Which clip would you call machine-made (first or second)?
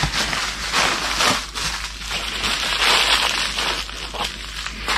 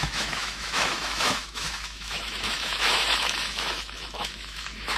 second